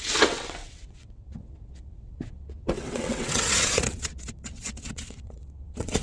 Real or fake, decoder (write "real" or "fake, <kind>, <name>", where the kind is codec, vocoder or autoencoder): fake, vocoder, WaveNeXt